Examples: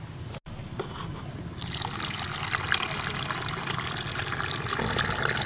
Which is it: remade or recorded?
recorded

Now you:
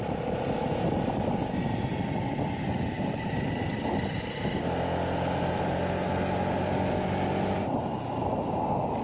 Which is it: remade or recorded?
recorded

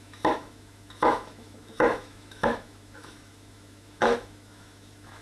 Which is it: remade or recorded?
remade